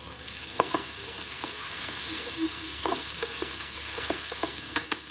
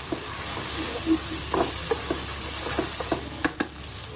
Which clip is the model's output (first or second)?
first